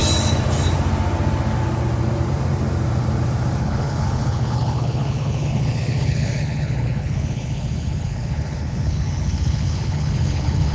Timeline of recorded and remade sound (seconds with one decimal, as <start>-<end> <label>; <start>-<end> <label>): 0.0-3.6 recorded; 3.6-10.7 remade

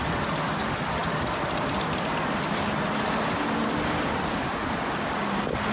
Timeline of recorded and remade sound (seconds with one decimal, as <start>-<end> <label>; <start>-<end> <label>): 0.0-5.7 recorded

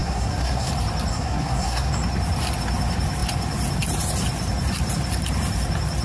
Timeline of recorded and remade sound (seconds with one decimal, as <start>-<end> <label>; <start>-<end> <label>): 0.0-0.7 remade; 0.7-1.1 recorded; 1.1-1.9 remade; 1.9-6.0 recorded

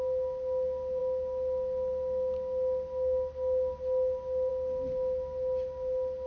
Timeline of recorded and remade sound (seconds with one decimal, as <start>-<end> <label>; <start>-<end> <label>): 0.0-6.3 recorded

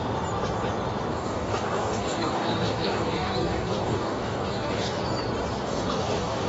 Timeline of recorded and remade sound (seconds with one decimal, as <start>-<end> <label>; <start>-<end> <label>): 0.0-1.1 recorded; 1.1-5.0 remade; 5.0-5.5 recorded; 5.5-6.5 remade

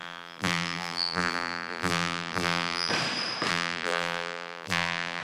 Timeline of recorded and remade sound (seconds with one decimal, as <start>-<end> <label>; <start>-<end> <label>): 0.0-2.9 remade; 2.9-3.5 recorded; 3.5-5.2 remade

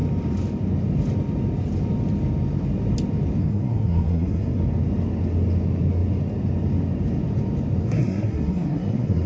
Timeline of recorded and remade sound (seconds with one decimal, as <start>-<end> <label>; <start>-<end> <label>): 0.0-3.4 recorded; 3.4-4.6 remade; 4.6-7.8 recorded; 7.8-9.3 remade